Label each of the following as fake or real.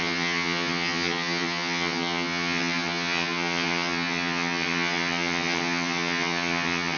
fake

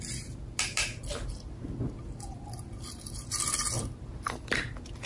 real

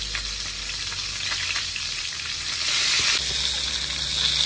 real